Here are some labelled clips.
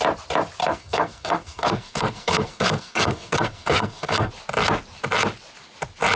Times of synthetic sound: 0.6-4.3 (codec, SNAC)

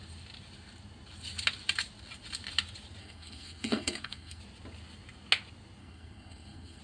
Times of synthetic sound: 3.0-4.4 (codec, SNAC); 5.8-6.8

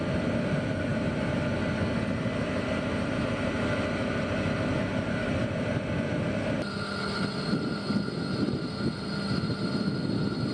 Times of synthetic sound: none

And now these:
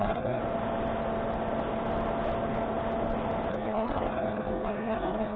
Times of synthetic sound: 0.0-0.4 (codec, SNAC); 3.5-5.4

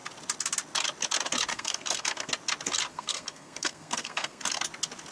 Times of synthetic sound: 1.5-2.3 (codec, SNAC); 2.9-4.4

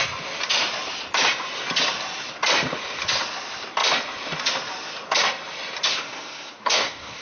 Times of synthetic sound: 5.9-7.2 (codec, SNAC)